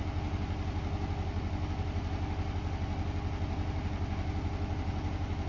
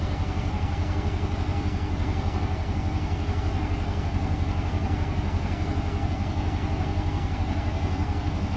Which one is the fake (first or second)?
second